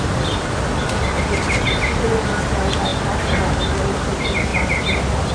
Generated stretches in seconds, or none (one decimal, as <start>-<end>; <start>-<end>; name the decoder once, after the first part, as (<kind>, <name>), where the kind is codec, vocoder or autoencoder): none